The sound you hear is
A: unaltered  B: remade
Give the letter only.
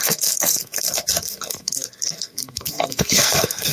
B